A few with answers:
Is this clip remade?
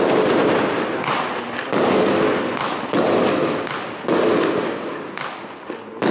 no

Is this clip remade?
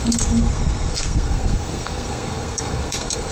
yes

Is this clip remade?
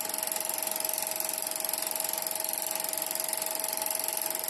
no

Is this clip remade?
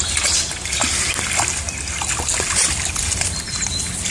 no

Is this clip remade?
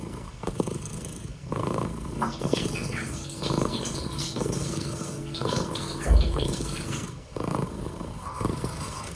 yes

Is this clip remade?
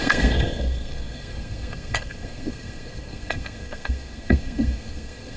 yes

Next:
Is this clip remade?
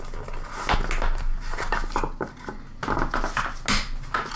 no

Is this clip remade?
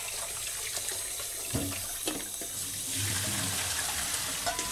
no